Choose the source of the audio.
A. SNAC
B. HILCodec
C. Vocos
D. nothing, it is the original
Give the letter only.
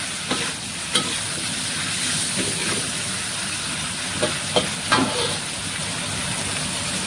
D